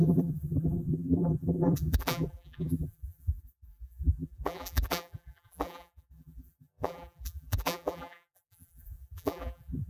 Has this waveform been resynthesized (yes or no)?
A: yes